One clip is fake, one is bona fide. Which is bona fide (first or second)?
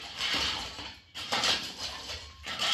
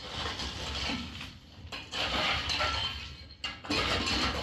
second